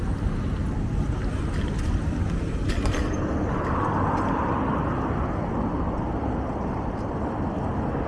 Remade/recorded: recorded